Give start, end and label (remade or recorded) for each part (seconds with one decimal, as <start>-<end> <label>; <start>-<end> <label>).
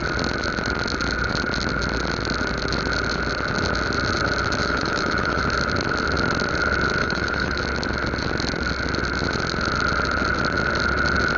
0.0-4.6 recorded; 4.6-5.4 remade; 5.4-7.0 recorded; 7.0-7.6 remade; 7.6-11.4 recorded